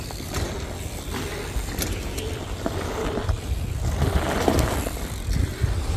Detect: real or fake real